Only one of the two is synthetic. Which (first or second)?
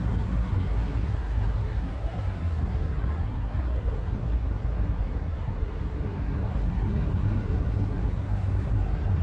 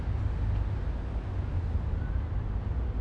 first